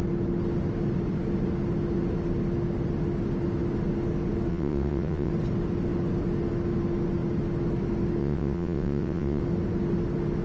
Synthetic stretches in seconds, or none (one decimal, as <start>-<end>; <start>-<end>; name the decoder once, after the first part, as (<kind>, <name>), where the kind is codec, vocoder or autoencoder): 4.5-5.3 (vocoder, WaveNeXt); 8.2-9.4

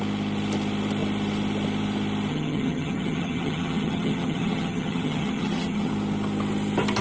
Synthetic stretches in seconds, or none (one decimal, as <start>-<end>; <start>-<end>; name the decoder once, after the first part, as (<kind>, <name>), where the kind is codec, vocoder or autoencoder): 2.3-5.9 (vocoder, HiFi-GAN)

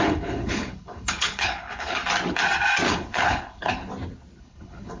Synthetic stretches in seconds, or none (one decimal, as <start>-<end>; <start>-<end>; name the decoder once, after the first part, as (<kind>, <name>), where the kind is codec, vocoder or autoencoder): 0.0-2.0 (codec, HILCodec); 2.9-3.9; 4.4-5.0

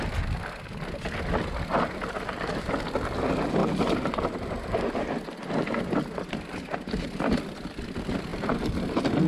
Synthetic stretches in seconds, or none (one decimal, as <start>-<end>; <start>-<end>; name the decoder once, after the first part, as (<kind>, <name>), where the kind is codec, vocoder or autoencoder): 3.6-4.8 (vocoder, BigVGAN v2)

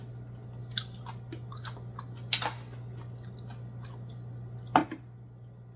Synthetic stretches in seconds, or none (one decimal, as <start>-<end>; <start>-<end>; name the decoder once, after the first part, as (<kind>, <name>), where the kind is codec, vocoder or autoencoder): none

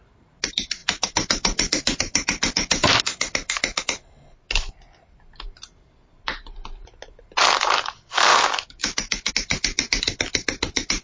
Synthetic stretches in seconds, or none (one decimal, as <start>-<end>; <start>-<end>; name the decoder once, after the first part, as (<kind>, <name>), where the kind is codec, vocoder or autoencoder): 8.3-9.3 (autoencoder, DAC-VAE)